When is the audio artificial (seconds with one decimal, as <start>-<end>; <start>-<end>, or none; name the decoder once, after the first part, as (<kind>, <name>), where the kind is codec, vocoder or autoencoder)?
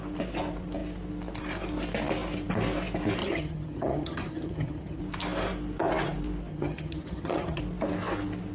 3.2-5.0 (vocoder, HiFi-GAN); 6.5-7.6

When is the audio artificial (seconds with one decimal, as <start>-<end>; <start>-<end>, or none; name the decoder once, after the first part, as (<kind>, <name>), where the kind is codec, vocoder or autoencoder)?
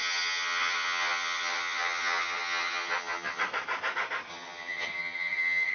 0.0-3.4 (vocoder, HiFi-GAN); 4.3-5.7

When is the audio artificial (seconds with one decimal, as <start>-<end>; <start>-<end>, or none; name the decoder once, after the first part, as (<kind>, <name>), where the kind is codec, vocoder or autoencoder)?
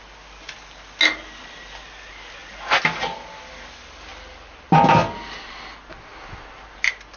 none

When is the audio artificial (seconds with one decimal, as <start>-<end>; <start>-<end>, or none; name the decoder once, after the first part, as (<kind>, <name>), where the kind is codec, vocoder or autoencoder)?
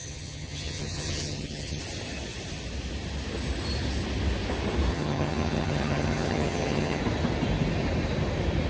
0.0-1.8 (vocoder, HiFi-GAN); 4.9-7.0